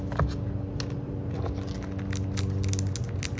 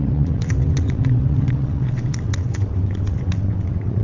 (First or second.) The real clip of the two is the first